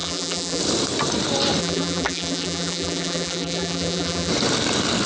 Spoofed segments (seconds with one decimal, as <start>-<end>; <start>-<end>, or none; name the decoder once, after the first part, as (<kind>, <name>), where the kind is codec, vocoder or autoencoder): 0.0-0.6 (vocoder, BigVGAN v2); 1.6-4.3